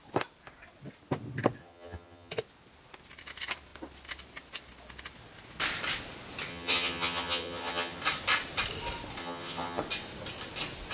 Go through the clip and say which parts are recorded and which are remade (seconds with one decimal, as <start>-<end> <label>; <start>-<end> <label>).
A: 0.0-1.6 recorded; 1.6-2.3 remade; 2.3-6.5 recorded; 6.5-8.0 remade; 8.0-9.2 recorded; 9.2-9.8 remade; 9.8-10.9 recorded